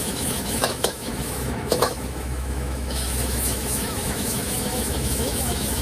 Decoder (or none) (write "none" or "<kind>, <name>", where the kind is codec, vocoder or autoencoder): autoencoder, DAC-VAE